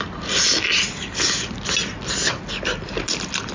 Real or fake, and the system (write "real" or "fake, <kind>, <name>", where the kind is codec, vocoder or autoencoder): real